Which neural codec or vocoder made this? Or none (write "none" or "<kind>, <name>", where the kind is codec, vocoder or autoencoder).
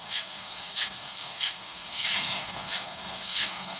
codec, SNAC